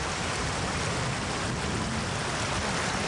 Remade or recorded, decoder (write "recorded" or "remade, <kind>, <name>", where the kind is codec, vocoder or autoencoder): recorded